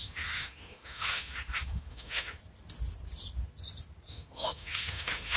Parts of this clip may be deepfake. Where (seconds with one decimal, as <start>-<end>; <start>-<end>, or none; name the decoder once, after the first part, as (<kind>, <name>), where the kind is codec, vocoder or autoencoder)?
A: 0.0-2.4 (autoencoder, DAC-VAE); 4.1-5.4

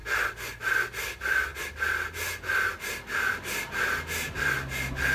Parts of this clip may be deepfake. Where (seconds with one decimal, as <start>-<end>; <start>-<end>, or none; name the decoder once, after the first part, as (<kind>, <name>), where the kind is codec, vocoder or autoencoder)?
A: none

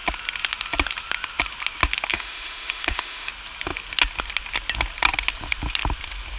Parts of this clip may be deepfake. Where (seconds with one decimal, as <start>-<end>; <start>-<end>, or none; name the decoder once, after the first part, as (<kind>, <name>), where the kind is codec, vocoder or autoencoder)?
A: 2.1-3.3 (autoencoder, DAC-VAE)

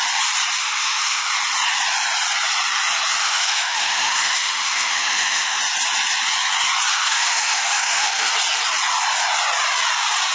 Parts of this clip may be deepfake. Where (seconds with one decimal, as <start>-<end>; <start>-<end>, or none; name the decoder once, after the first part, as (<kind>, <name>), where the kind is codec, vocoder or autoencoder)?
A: 0.6-1.3 (autoencoder, DAC-VAE); 3.2-5.6; 6.9-8.3

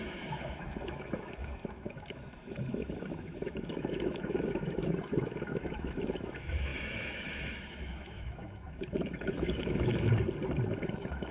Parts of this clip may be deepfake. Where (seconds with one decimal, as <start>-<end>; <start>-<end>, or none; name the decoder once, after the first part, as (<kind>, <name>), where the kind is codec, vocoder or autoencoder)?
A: 0.0-10.1 (autoencoder, DAC-VAE); 10.7-11.3

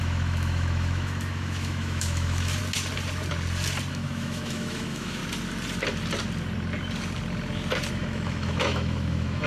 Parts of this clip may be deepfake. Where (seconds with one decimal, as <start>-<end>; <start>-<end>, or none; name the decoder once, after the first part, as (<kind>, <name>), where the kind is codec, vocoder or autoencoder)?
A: 0.0-2.6 (autoencoder, DAC-VAE); 3.9-5.2; 7.9-9.5